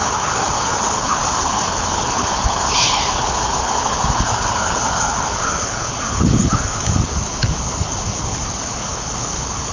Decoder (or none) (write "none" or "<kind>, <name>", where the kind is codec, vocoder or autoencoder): codec, HILCodec